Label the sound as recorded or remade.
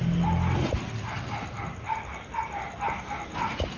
recorded